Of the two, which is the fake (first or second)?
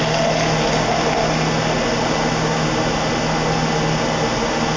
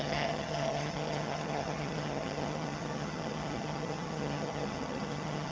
second